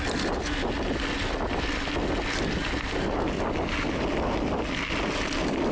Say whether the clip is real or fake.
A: real